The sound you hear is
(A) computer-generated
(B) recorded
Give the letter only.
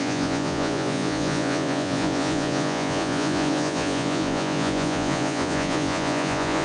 A